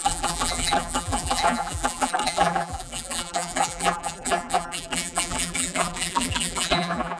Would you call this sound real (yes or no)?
no